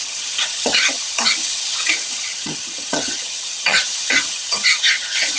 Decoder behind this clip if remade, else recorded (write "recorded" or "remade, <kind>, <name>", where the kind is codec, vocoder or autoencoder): remade, vocoder, HiFi-GAN